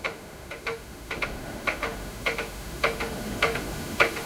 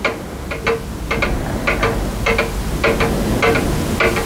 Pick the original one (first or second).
second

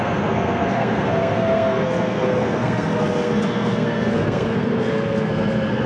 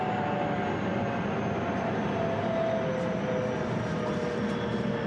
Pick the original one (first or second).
second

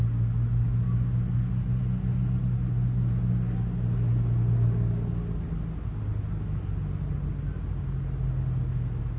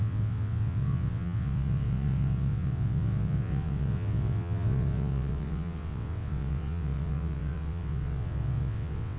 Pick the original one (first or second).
first